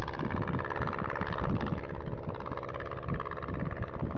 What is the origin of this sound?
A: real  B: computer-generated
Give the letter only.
A